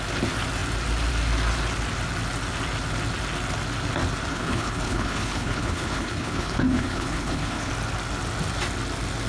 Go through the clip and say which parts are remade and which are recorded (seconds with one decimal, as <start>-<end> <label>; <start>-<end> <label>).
0.0-4.3 recorded; 4.3-7.7 remade; 7.7-9.3 recorded